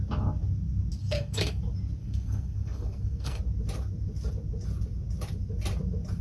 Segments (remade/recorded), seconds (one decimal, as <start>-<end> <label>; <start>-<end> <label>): 0.0-1.0 recorded; 1.0-1.6 remade; 1.6-2.0 recorded; 2.0-3.4 remade; 3.4-6.2 recorded